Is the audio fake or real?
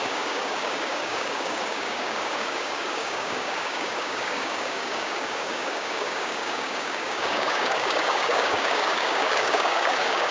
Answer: fake